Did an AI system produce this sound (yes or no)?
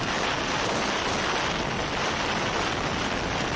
no